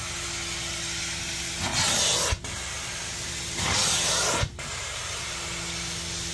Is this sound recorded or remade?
recorded